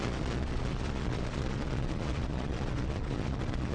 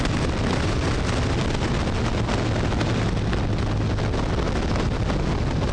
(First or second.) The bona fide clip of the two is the second